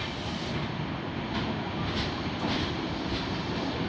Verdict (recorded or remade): recorded